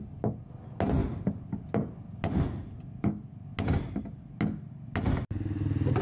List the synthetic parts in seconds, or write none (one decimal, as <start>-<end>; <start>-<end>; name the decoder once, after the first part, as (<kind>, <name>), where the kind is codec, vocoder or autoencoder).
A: none